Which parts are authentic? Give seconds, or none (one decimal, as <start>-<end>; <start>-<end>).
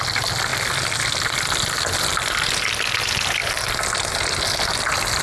0.0-5.2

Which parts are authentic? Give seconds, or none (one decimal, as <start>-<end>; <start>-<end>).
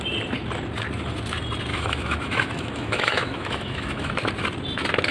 0.0-1.7; 4.1-5.1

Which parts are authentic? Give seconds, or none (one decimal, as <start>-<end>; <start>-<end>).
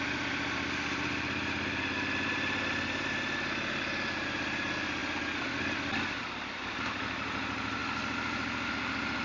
0.0-9.2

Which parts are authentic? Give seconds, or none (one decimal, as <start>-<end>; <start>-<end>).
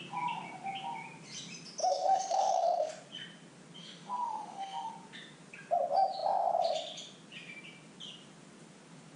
0.0-1.8; 2.9-3.8; 4.9-9.2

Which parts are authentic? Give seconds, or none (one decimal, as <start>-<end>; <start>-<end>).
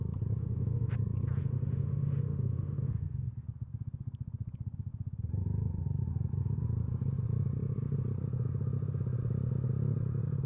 0.0-0.4; 0.9-1.4; 3.3-10.5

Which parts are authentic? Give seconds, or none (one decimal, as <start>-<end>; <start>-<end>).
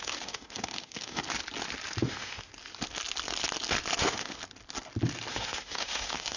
1.2-2.0; 2.5-4.0; 4.4-5.3